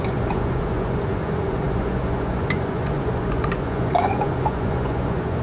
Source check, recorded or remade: remade